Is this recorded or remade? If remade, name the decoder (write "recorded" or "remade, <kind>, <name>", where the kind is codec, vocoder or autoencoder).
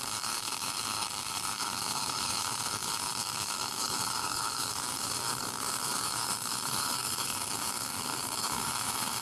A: remade, codec, DAC